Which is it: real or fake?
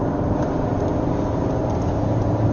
real